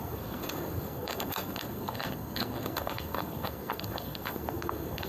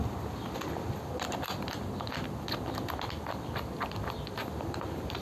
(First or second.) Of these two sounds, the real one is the second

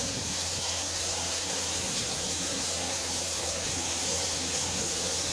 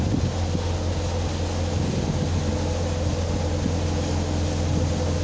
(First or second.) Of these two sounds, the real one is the second